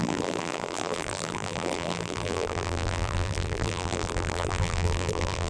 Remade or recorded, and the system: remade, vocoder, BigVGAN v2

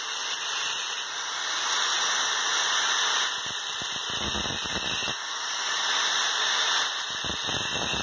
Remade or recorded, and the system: recorded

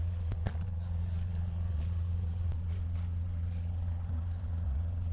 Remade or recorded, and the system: remade, vocoder, Vocos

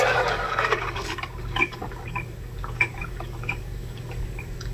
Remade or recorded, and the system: remade, codec, DAC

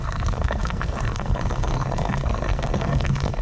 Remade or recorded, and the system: remade, codec, SNAC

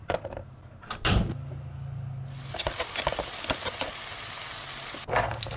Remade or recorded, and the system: recorded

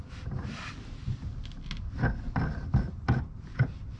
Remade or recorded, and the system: recorded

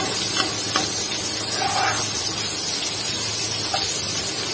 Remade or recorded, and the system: recorded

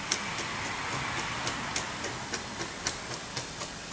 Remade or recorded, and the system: recorded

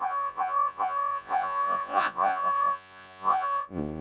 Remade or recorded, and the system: remade, vocoder, Vocos